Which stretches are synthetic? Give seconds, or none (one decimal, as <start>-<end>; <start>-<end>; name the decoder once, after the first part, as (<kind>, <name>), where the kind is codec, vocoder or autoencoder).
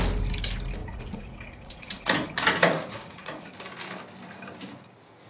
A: 0.8-3.5 (vocoder, Vocos)